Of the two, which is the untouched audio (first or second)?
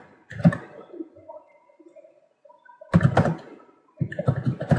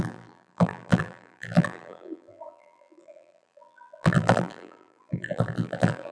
first